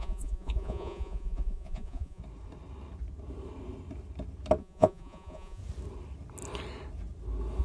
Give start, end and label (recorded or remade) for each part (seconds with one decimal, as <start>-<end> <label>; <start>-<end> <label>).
0.0-2.2 remade; 2.2-4.6 recorded; 4.6-5.6 remade; 5.6-7.6 recorded